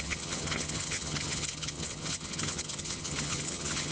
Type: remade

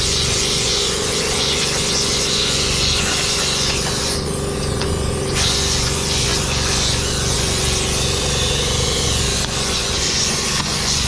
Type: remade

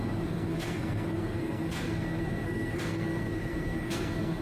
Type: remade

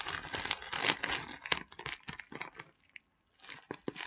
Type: recorded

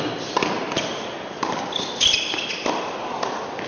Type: remade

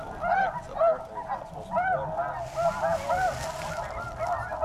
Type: recorded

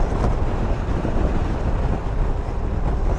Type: recorded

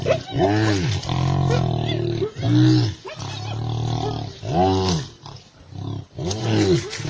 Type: recorded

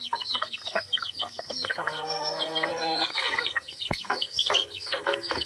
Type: remade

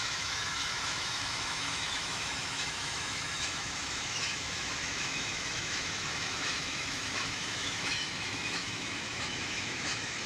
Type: remade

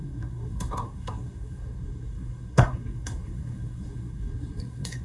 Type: remade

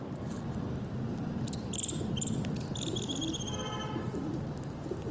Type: recorded